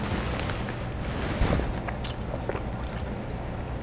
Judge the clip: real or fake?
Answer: real